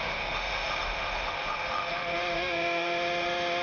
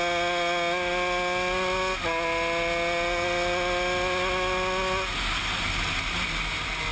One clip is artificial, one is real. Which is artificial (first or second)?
first